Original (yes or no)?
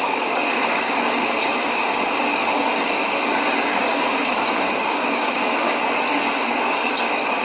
no